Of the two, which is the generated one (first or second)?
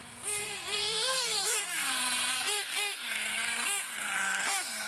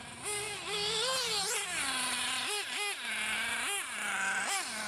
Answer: first